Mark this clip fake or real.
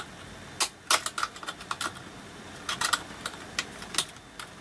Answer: real